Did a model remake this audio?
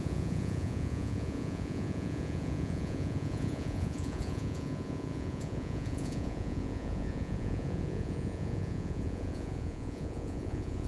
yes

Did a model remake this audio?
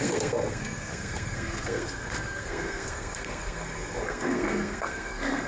yes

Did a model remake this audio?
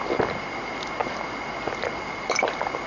no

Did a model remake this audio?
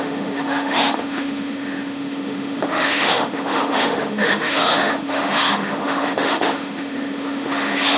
yes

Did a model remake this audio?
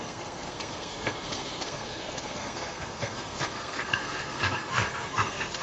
yes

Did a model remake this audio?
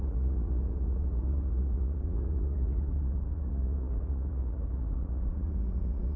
yes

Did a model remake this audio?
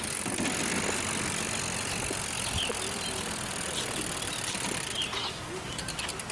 no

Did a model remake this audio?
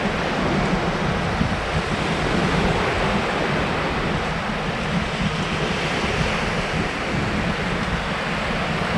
no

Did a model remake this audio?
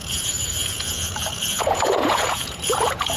yes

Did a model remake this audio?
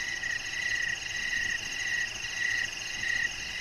no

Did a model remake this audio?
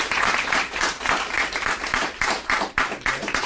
yes